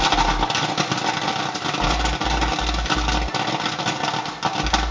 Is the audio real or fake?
real